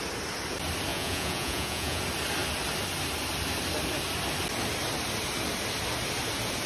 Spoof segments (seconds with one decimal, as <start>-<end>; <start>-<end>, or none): 0.9-2.0